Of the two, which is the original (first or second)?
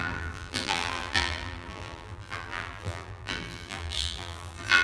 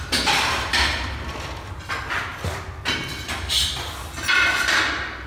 second